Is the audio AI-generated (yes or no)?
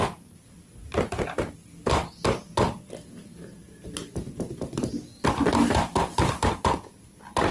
no